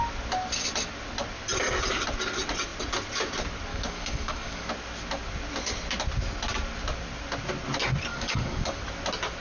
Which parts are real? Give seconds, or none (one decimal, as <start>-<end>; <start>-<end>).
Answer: 0.0-3.7; 4.7-8.1; 8.8-9.4